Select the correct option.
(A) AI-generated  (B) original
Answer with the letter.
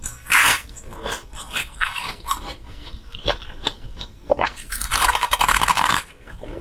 A